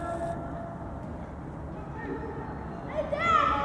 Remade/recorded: recorded